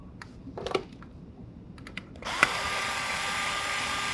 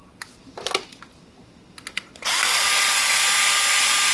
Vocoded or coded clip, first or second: first